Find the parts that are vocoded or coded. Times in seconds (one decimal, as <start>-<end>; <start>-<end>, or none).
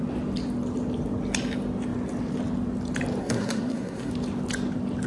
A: 3.2-4.1